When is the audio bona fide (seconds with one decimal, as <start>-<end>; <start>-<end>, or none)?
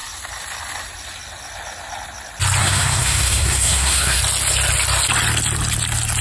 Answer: 0.0-2.6; 4.2-6.2